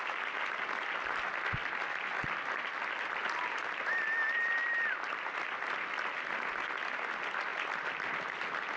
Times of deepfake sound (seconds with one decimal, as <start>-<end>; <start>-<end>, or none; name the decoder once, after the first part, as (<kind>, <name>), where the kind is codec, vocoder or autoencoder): 3.2-4.8 (vocoder, BigVGAN v2)